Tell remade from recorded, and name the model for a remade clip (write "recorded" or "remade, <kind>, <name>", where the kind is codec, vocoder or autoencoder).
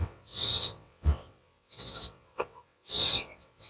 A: remade, vocoder, WaveNeXt